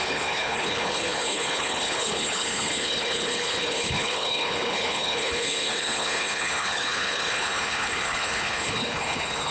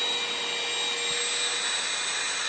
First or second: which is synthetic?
first